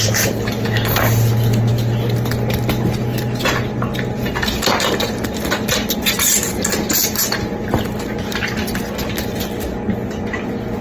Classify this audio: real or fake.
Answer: real